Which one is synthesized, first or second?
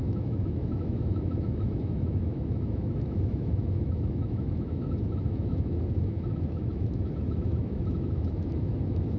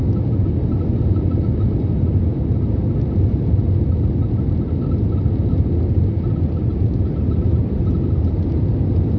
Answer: first